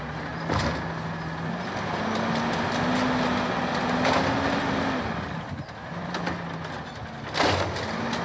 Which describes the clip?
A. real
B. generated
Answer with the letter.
A